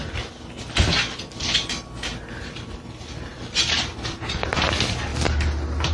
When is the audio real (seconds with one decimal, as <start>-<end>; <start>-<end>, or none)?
0.0-5.9